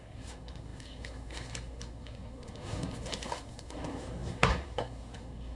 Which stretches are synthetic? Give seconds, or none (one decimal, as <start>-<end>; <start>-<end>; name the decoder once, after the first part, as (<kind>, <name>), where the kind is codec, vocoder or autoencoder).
0.0-5.6 (codec, SNAC)